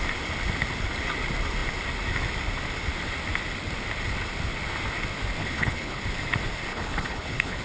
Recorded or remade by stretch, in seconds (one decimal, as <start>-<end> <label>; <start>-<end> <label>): 0.0-5.4 recorded; 5.4-6.0 remade; 6.0-6.7 recorded; 6.7-7.6 remade